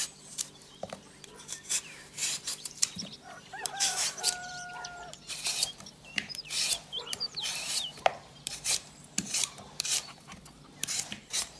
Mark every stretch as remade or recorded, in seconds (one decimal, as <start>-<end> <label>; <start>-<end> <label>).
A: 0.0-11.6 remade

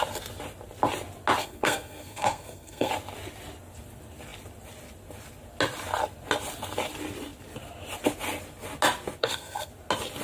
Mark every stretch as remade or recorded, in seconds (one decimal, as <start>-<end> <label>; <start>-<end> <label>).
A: 0.0-1.4 recorded; 1.4-2.9 remade; 2.9-9.2 recorded; 9.2-9.7 remade; 9.7-10.2 recorded

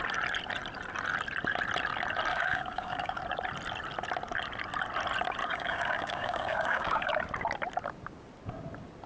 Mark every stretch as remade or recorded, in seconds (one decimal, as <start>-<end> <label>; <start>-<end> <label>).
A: 0.0-2.3 recorded; 2.3-3.2 remade; 3.2-5.4 recorded; 5.4-7.1 remade; 7.1-9.1 recorded